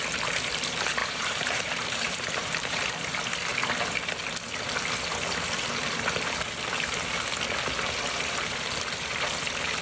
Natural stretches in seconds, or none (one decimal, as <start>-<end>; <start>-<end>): 0.0-1.0; 2.9-9.8